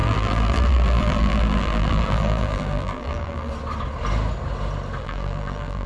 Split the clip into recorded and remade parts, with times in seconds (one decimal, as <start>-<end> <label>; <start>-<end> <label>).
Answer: 0.0-3.5 remade; 3.5-5.0 recorded; 5.0-5.9 remade